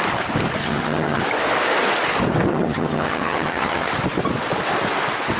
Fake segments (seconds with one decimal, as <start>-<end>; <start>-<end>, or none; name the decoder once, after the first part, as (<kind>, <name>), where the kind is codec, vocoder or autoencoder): 0.6-1.2 (vocoder, HiFi-GAN); 2.5-3.9